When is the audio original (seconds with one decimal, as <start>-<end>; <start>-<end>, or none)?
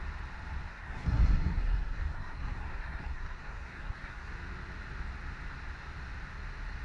0.0-0.7; 4.3-6.8